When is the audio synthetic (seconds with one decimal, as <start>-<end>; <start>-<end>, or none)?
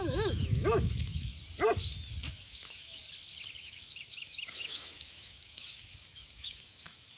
0.0-1.3; 2.2-3.0; 3.6-7.2